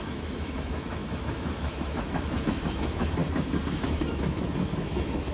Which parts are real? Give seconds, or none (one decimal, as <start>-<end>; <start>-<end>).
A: 3.2-3.7